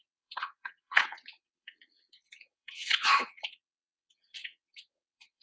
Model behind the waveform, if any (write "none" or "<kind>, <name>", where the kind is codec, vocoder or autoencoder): vocoder, WaveNeXt